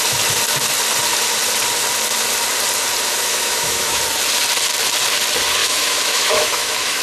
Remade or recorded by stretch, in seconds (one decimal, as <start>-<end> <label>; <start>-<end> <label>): 0.0-3.3 recorded; 3.3-4.0 remade; 4.0-5.6 recorded; 5.6-7.0 remade